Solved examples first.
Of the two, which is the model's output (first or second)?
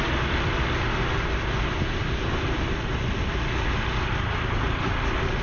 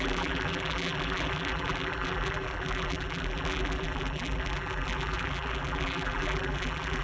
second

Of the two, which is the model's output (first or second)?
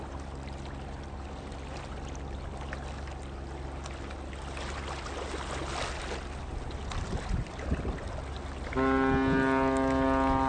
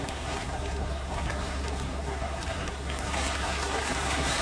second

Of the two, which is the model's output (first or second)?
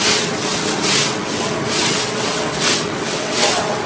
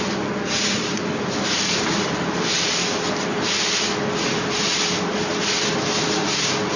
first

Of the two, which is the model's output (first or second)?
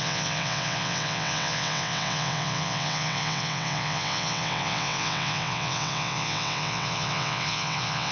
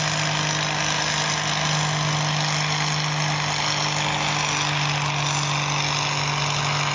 first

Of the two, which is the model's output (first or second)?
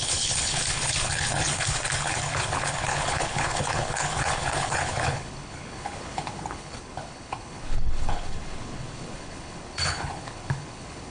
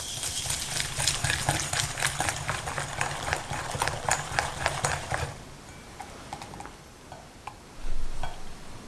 first